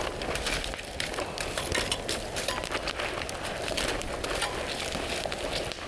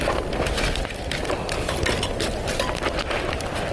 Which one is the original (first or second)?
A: first